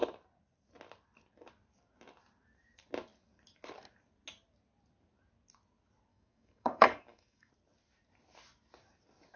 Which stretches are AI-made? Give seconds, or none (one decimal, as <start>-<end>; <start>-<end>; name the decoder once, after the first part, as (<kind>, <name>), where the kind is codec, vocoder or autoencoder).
6.1-7.5 (codec, DAC)